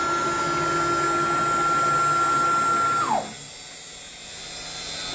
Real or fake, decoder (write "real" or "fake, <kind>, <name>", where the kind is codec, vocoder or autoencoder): real